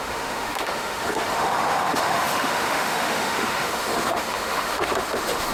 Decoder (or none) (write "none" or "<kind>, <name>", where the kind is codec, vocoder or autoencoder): autoencoder, DAC-VAE